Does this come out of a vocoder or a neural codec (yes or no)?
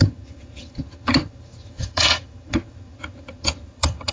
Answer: yes